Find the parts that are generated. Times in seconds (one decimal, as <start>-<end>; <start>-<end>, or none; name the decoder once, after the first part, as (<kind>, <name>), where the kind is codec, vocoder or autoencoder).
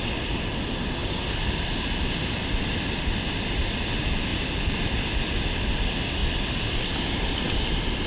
none